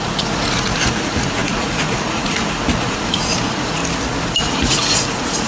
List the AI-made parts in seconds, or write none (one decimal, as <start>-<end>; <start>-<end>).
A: 0.0-3.8; 4.4-5.5